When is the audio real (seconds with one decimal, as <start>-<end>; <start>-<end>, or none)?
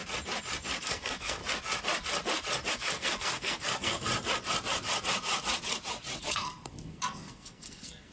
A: 0.0-0.8; 1.4-2.7; 4.1-6.2